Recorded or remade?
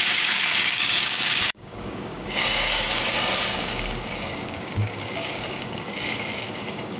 remade